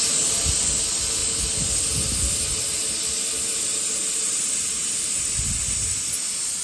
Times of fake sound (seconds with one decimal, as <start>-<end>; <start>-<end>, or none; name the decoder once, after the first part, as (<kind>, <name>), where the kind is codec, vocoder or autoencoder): none